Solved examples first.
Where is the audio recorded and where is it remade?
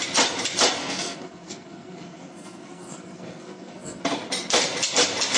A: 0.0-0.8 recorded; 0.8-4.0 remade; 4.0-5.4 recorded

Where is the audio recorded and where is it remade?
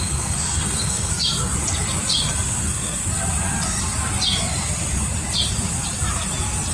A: 0.0-1.1 remade; 1.1-2.6 recorded; 2.6-3.0 remade; 3.0-6.7 recorded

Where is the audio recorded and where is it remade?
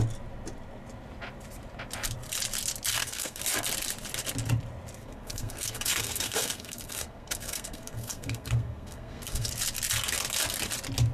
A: 0.0-2.9 recorded; 2.9-3.4 remade; 3.4-5.0 recorded; 5.0-9.5 remade; 9.5-11.1 recorded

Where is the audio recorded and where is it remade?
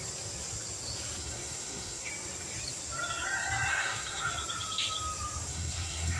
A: 0.0-1.2 recorded; 1.2-2.1 remade; 2.1-3.7 recorded; 3.7-4.3 remade; 4.3-5.5 recorded; 5.5-6.2 remade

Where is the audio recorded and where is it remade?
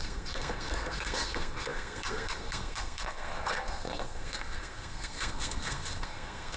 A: 0.0-6.6 remade